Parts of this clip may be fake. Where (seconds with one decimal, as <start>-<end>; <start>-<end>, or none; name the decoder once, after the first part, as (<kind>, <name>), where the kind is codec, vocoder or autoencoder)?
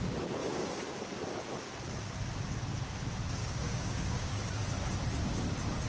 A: 3.4-4.4 (codec, DAC)